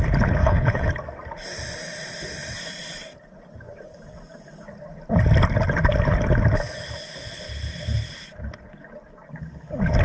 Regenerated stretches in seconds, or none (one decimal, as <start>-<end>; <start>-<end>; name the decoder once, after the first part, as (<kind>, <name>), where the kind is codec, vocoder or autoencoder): 0.4-0.9 (codec, HILCodec)